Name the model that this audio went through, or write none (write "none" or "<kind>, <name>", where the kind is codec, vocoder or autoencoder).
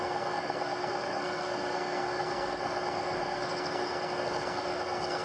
codec, SNAC